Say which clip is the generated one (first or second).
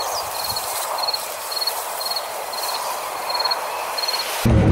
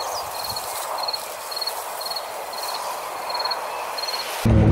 first